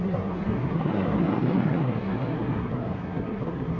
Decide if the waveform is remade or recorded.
remade